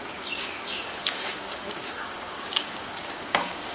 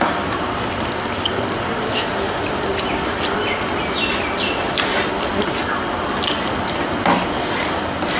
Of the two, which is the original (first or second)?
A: second